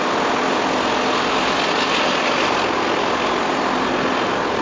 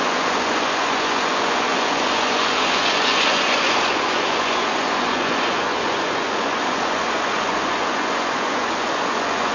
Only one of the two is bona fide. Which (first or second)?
first